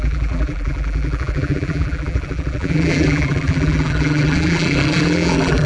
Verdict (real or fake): fake